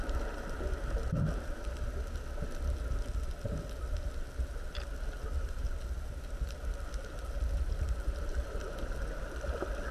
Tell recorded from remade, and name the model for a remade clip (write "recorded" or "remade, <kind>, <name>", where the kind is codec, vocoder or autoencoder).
recorded